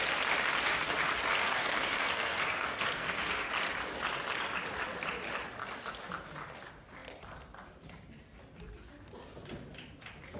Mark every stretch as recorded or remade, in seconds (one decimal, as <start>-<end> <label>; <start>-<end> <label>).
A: 0.0-1.3 recorded; 1.3-3.5 remade; 3.5-10.4 recorded